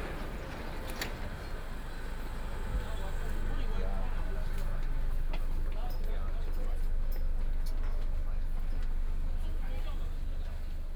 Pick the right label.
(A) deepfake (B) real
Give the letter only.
B